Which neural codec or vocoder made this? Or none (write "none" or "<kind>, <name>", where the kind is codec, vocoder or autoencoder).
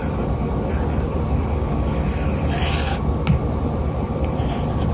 none